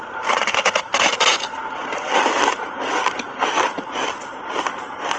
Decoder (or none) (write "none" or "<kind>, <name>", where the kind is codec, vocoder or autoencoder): none